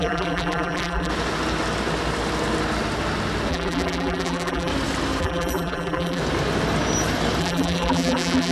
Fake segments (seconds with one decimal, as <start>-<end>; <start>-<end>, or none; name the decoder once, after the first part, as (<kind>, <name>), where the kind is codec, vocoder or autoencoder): 0.0-1.1 (vocoder, BigVGAN v2); 3.5-4.7; 5.2-6.2; 7.4-8.5

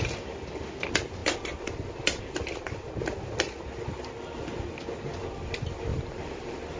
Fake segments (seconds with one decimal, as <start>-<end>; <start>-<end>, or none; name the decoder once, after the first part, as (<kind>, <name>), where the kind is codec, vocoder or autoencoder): 1.2-2.2 (vocoder, BigVGAN v2); 5.9-6.8

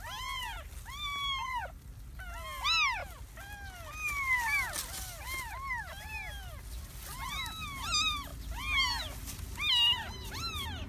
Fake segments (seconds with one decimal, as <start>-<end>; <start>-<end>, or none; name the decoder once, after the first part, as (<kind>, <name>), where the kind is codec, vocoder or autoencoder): none

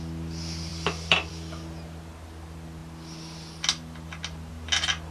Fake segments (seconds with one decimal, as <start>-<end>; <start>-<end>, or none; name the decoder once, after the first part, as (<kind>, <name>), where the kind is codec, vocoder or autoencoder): 0.7-1.3 (vocoder, BigVGAN v2)

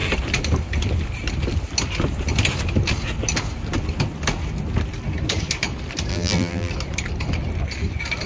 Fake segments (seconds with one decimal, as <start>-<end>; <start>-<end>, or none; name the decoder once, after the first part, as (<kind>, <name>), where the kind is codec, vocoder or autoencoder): 6.1-6.7 (vocoder, BigVGAN v2)